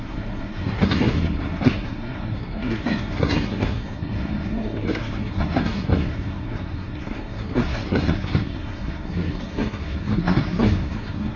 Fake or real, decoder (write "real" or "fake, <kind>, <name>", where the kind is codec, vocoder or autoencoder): fake, codec, SNAC